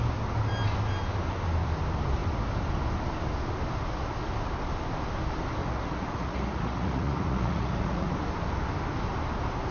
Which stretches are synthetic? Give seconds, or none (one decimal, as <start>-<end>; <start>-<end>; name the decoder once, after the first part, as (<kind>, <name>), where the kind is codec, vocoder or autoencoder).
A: 5.6-8.1 (vocoder, Vocos)